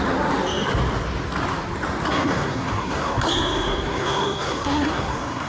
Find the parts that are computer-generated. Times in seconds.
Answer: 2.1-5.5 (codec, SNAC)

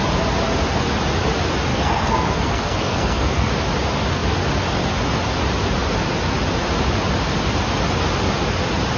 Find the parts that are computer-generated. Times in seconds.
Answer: 1.7-3.5 (codec, SNAC)

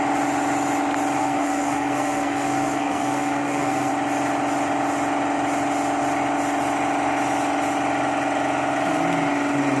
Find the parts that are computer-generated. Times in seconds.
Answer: 1.2-3.9 (codec, SNAC)